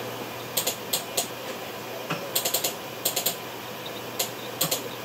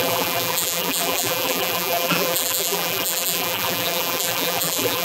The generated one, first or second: second